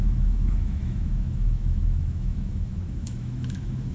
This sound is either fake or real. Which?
fake